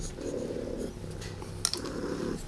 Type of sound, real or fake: real